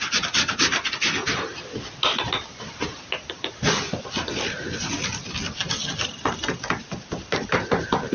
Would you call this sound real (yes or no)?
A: yes